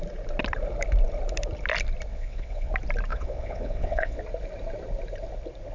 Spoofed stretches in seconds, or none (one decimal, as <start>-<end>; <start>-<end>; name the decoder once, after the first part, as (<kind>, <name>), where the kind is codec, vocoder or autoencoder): 2.1-2.7 (vocoder, WaveNeXt); 3.1-4.2